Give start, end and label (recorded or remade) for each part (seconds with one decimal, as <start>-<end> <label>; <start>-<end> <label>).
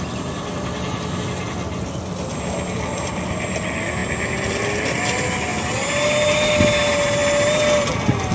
0.0-5.5 recorded; 5.5-6.5 remade; 6.5-8.3 recorded